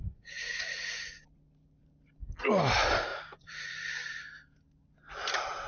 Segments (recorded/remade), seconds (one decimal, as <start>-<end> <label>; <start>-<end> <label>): 0.0-1.0 remade; 1.0-3.1 recorded; 3.1-3.9 remade; 3.9-5.7 recorded

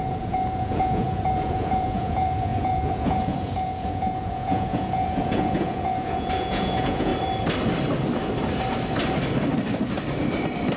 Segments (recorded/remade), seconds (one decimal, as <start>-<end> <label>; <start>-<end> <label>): 0.0-7.1 remade; 7.1-10.8 recorded

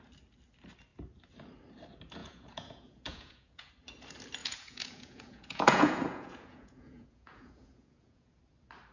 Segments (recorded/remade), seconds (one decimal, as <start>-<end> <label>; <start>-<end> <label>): 0.0-2.2 recorded; 2.2-3.7 remade; 3.7-4.4 recorded; 4.4-8.4 remade; 8.4-8.9 recorded